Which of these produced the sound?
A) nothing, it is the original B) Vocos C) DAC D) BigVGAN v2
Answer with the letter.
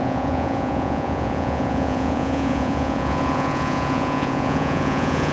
B